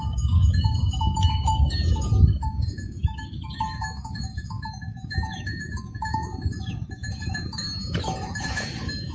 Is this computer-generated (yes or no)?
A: yes